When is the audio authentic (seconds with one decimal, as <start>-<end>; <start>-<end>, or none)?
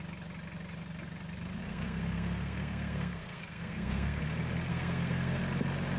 0.0-1.6; 4.2-4.7; 5.4-6.0